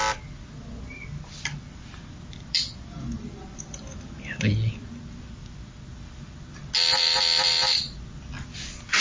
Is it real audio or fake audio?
real